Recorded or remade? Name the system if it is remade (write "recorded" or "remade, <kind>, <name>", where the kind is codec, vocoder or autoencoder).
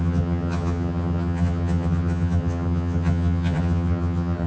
remade, vocoder, HiFi-GAN